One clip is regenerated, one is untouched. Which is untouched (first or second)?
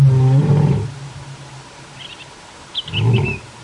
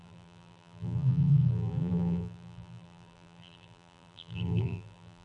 first